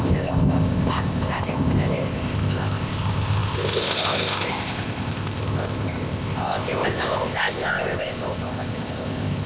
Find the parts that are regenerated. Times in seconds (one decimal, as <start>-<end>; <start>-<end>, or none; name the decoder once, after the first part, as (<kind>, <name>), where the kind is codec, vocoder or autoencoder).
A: 0.0-9.5 (codec, ZipCodec)